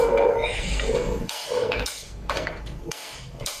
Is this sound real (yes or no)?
no